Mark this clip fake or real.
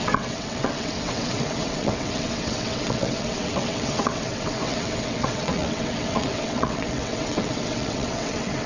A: fake